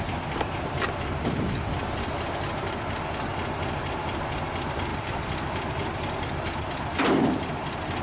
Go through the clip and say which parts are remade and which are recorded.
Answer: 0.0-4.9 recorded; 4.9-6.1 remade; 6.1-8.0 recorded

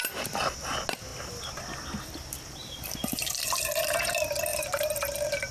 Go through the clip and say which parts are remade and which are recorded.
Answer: 0.0-2.6 recorded; 2.6-4.1 remade; 4.1-4.5 recorded; 4.5-5.5 remade

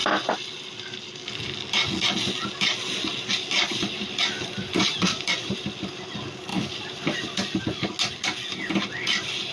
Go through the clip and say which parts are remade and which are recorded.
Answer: 0.0-1.9 remade; 1.9-3.7 recorded; 3.7-6.0 remade; 6.0-6.5 recorded; 6.5-7.6 remade; 7.6-9.5 recorded

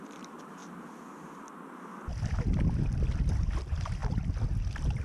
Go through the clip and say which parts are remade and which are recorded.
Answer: 0.0-0.6 remade; 0.6-3.6 recorded; 3.6-4.0 remade; 4.0-5.0 recorded

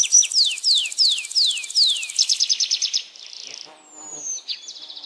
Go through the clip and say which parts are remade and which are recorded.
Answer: 0.0-4.1 recorded; 4.1-5.1 remade

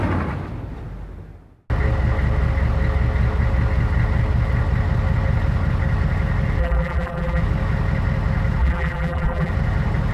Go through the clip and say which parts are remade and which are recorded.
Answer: 0.0-6.6 recorded; 6.6-7.4 remade; 7.4-8.6 recorded; 8.6-9.5 remade; 9.5-10.1 recorded

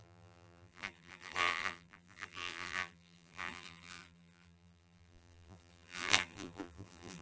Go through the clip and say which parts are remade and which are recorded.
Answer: 0.0-7.2 remade